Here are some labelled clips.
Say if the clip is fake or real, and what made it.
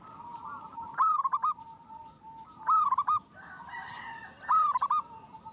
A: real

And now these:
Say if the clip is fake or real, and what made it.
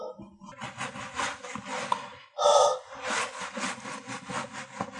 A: real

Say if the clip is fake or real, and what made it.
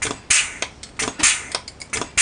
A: real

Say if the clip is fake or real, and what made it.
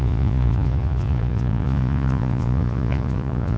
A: fake, vocoder, Vocos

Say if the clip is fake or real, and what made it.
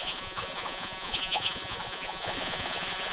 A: fake, vocoder, Vocos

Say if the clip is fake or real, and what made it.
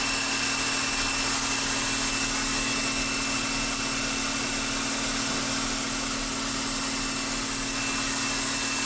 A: real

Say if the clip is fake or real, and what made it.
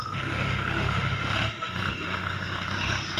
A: fake, autoencoder, DAC-VAE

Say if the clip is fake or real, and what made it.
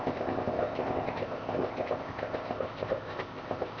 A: fake, codec, ZipCodec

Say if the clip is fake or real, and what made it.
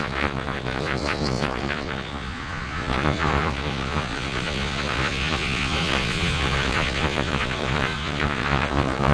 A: fake, vocoder, Vocos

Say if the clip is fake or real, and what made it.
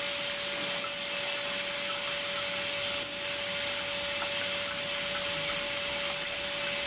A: real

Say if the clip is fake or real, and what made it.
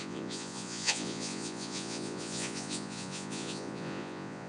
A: fake, vocoder, Vocos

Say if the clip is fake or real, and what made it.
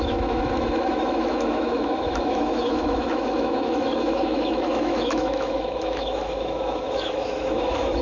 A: fake, autoencoder, DAC-VAE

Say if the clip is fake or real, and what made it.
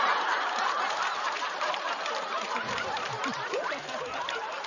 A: fake, vocoder, BigVGAN v2